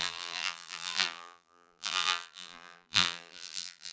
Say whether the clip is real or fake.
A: fake